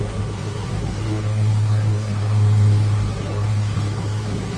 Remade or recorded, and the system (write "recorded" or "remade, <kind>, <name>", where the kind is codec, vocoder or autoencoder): remade, codec, SNAC